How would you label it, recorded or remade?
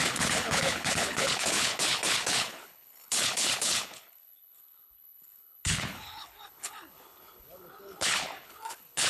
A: remade